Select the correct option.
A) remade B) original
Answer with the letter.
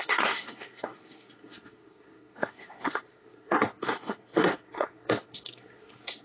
A